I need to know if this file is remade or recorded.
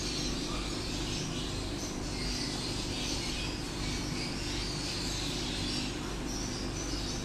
recorded